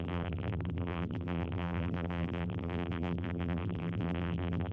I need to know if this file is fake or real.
fake